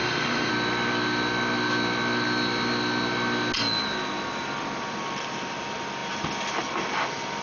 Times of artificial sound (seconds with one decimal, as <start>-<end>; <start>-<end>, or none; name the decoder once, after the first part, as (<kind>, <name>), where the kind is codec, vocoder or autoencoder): 0.0-0.5 (autoencoder, DAC-VAE)